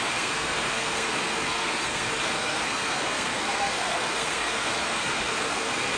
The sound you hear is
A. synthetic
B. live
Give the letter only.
A